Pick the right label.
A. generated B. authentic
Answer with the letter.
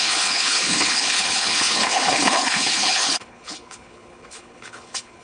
A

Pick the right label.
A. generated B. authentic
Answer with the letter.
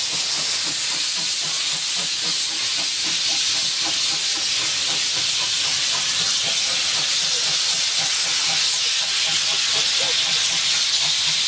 B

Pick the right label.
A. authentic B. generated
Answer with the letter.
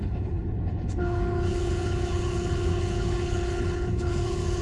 B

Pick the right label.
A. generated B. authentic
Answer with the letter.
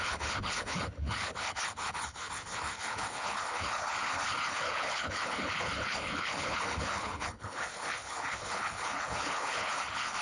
A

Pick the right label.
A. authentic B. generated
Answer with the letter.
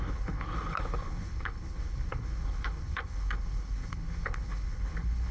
B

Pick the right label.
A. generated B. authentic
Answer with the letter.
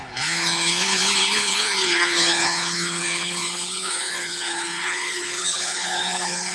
A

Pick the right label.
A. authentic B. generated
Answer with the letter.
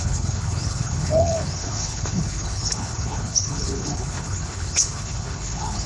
B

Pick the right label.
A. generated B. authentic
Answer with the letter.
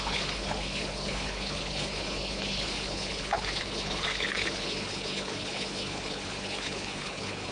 A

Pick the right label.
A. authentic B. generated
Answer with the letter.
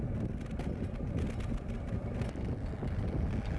A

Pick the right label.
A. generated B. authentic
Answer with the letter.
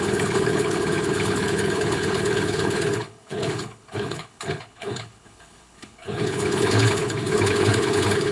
A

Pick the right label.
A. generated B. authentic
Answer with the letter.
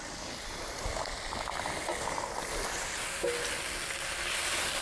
B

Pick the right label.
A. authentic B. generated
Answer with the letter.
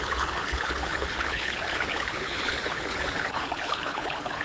B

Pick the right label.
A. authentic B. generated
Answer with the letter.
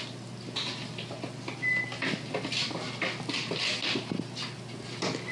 A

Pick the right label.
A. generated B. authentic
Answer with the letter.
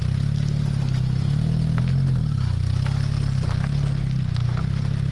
B